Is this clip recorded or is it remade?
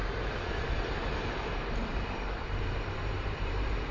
remade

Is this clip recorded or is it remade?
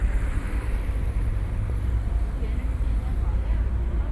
remade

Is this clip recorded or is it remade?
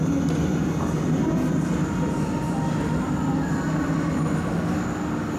recorded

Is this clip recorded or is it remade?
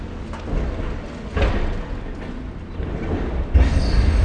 recorded